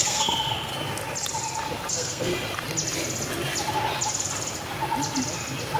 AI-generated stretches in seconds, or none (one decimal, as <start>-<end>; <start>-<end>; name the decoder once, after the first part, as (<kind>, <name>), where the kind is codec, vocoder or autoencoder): 0.0-0.7 (codec, SNAC); 1.9-2.3